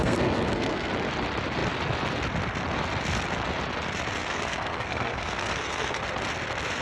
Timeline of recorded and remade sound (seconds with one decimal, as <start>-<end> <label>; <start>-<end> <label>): 0.0-0.9 remade; 0.9-4.2 recorded; 4.2-6.0 remade; 6.0-6.8 recorded